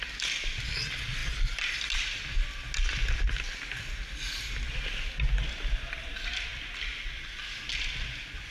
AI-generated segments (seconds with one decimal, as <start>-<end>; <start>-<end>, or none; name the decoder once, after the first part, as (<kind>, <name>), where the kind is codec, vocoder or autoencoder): none